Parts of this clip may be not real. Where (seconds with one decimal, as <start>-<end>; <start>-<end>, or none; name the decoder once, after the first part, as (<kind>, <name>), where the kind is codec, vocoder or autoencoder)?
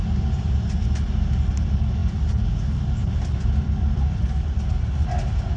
3.0-4.6 (vocoder, BigVGAN v2)